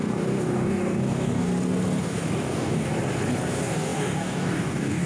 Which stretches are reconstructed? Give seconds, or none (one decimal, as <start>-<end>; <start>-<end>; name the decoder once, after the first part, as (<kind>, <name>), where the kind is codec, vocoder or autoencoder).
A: 0.0-1.5 (codec, DAC); 2.0-2.9; 3.4-5.1